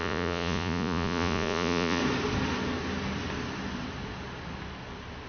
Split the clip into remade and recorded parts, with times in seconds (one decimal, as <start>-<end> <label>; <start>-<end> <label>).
0.0-2.0 remade; 2.0-5.3 recorded